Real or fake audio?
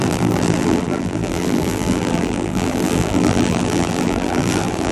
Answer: fake